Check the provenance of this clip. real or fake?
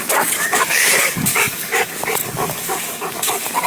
fake